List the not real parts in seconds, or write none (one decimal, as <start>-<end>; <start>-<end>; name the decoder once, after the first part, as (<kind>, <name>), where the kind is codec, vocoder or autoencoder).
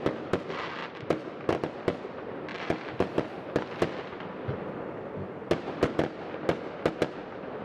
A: none